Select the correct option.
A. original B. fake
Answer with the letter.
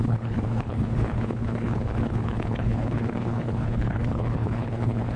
B